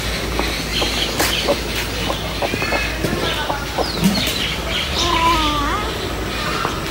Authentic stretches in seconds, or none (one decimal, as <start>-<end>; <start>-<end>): 0.0-6.9